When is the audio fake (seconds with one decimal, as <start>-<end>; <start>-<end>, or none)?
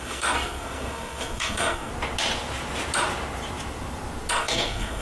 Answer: 0.0-1.9; 4.3-5.0